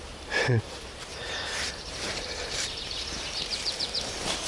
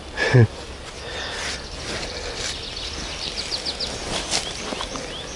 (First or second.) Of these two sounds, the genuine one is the second